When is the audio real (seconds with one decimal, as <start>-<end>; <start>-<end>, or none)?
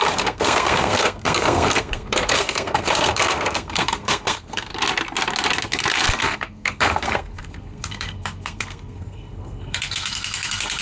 4.7-6.1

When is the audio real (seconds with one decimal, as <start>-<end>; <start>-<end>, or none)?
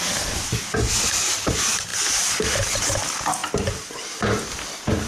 0.0-5.1